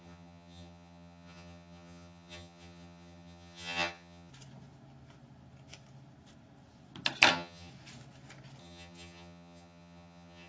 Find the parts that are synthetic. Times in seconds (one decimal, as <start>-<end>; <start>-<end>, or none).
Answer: 0.0-4.3; 7.3-7.7; 8.6-10.5

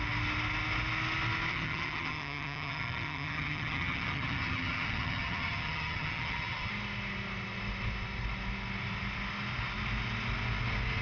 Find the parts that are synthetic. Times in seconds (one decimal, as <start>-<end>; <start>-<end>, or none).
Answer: 1.5-6.7

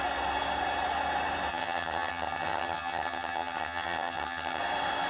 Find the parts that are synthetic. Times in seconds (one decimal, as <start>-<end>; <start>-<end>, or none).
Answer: 1.5-4.6

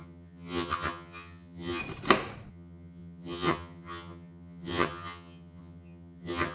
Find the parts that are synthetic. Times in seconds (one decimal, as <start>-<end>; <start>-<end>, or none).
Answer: 0.0-1.8; 2.5-6.5

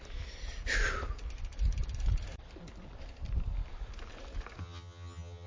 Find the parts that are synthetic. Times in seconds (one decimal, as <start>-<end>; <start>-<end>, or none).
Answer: 4.6-5.5

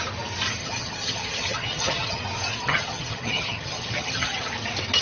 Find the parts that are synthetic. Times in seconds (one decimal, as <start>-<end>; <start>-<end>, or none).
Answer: 0.6-2.2; 2.6-4.5